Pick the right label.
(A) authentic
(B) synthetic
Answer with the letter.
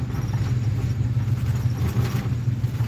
A